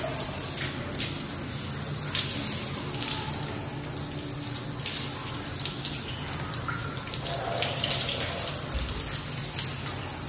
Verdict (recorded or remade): recorded